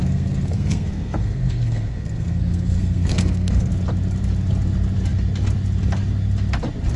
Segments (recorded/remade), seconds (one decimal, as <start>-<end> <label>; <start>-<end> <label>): 0.0-3.7 remade; 3.7-7.0 recorded